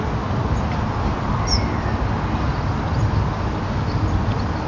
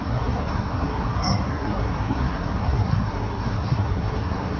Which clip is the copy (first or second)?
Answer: second